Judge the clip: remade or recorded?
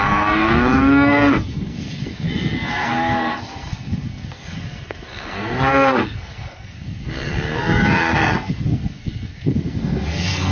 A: remade